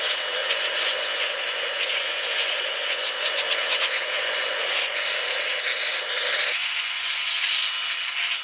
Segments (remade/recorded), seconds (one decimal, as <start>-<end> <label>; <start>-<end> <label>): 0.0-0.4 recorded; 0.4-5.0 remade; 5.0-6.6 recorded; 6.6-7.5 remade; 7.5-8.4 recorded